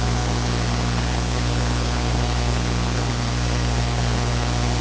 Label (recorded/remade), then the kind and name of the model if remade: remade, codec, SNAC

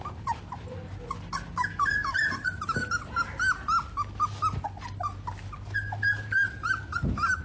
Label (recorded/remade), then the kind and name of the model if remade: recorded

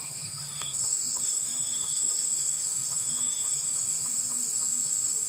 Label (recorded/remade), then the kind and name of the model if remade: remade, autoencoder, DAC-VAE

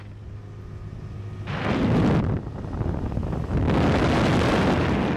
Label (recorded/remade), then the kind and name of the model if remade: recorded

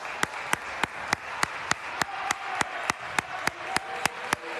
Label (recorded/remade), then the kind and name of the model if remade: recorded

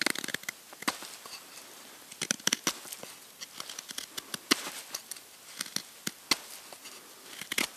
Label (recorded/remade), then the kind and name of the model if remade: recorded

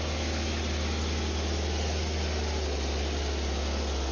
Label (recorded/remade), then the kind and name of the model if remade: recorded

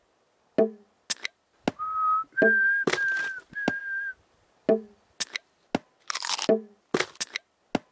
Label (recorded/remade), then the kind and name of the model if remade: recorded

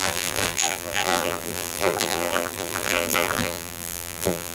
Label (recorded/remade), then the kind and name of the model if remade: remade, vocoder, BigVGAN v2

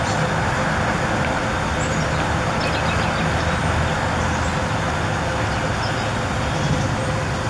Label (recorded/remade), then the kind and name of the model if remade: recorded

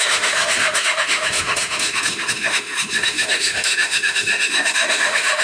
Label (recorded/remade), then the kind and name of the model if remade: remade, autoencoder, DAC-VAE